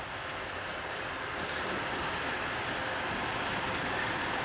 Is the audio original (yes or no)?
yes